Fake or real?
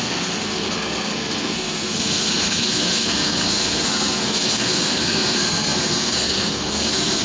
fake